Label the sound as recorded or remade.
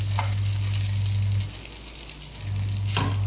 recorded